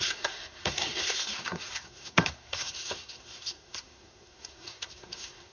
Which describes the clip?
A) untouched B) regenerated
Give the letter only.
B